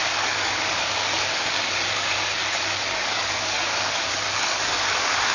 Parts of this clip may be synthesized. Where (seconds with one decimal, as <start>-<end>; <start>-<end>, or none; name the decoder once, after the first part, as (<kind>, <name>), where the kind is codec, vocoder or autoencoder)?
0.0-5.3 (codec, DAC)